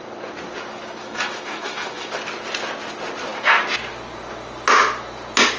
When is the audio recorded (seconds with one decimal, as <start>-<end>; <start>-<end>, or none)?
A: 0.0-1.0; 2.1-5.6

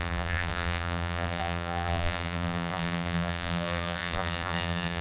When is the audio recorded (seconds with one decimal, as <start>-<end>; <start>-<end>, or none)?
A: none

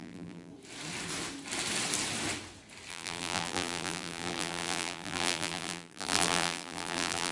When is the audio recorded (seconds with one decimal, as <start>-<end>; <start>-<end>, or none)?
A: 0.5-2.9

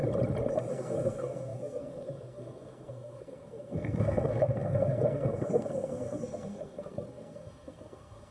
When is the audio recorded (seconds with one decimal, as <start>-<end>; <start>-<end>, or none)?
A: 0.0-0.7

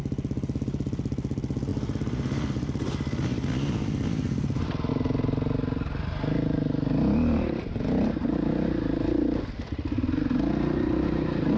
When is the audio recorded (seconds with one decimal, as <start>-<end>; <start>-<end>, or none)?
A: 0.0-11.6